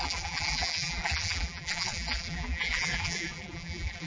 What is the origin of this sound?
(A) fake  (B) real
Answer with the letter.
A